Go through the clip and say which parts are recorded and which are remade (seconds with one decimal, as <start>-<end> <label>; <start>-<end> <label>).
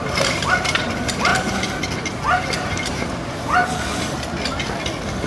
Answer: 0.0-1.3 remade; 1.3-2.7 recorded; 2.7-3.6 remade; 3.6-5.3 recorded